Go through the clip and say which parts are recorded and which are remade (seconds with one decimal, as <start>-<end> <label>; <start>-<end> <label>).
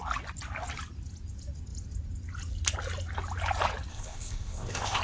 0.0-3.9 recorded; 3.9-5.0 remade